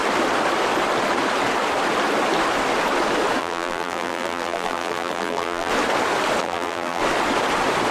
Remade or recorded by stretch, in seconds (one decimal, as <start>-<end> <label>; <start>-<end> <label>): 0.0-3.4 recorded; 3.4-5.7 remade; 5.7-6.4 recorded; 6.4-7.0 remade; 7.0-7.9 recorded